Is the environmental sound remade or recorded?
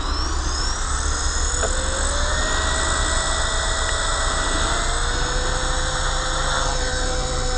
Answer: recorded